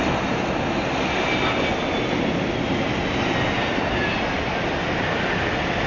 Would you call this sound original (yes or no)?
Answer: yes